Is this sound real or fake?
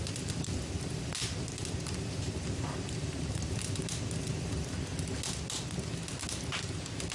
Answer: real